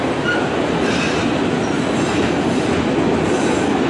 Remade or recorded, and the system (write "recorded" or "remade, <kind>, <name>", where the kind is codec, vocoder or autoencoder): recorded